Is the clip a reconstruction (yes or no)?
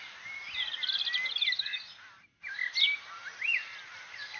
no